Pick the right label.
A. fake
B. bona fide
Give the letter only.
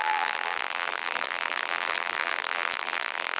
A